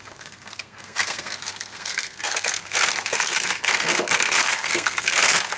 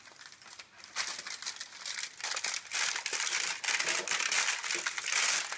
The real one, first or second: second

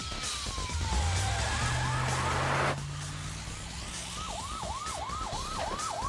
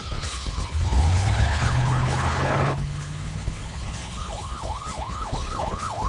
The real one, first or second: first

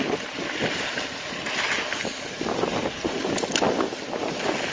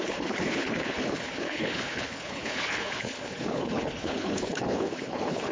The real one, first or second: first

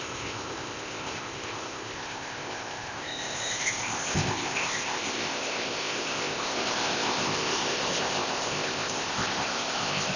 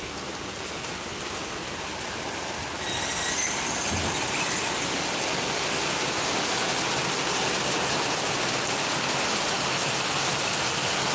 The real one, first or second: second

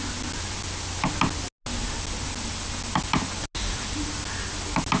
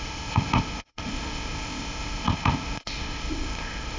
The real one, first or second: first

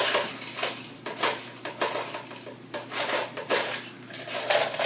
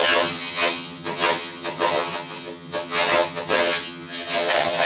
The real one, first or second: first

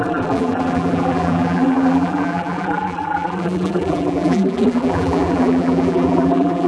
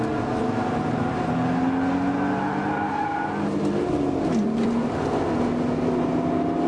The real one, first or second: second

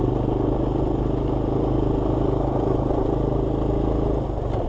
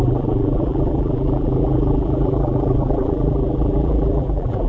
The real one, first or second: first